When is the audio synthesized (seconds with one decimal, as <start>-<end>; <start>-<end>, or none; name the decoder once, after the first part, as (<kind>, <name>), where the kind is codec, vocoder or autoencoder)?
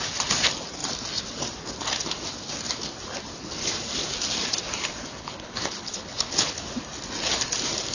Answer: 5.2-6.6 (codec, HILCodec)